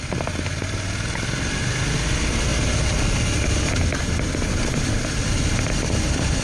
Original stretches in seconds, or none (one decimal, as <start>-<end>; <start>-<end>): 0.0-6.4